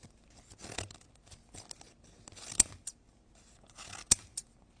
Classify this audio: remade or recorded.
recorded